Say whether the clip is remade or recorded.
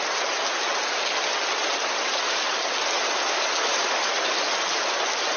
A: recorded